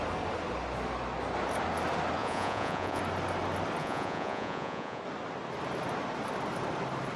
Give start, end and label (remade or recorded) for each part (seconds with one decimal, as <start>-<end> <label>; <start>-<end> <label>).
0.0-2.2 recorded; 2.2-3.0 remade; 3.0-3.8 recorded; 3.8-5.0 remade; 5.0-7.2 recorded